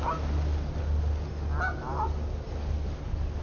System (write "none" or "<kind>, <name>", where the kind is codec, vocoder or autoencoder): none